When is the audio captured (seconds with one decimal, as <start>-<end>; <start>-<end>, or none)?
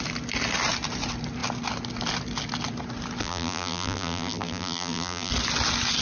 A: 0.0-3.2; 5.3-6.0